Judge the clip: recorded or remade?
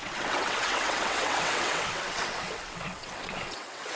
remade